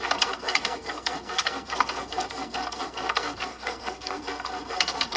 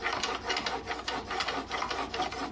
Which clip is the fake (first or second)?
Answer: first